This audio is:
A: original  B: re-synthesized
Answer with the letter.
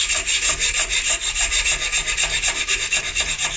A